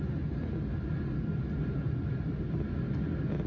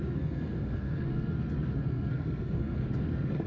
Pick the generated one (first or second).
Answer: second